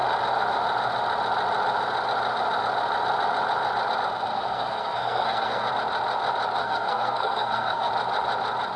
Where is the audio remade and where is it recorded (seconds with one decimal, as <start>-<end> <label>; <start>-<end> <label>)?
0.0-4.3 recorded; 4.3-5.7 remade; 5.7-6.6 recorded; 6.6-7.9 remade; 7.9-8.8 recorded